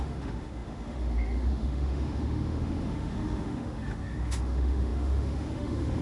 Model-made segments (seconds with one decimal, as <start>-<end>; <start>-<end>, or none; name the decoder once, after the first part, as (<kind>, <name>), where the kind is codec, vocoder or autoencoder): 0.0-6.0 (autoencoder, DAC-VAE)